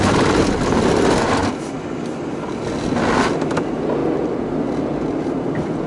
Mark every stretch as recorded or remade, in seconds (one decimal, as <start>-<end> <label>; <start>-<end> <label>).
0.0-5.9 recorded